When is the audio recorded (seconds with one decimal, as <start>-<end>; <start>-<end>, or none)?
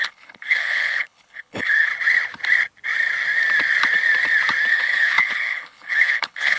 1.9-4.7